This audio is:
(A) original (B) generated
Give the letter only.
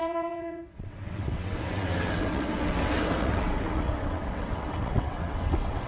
B